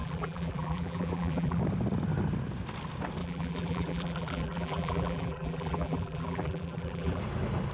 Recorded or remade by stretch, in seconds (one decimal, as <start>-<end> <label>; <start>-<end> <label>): 0.0-1.6 remade; 1.6-3.2 recorded; 3.2-7.2 remade; 7.2-7.7 recorded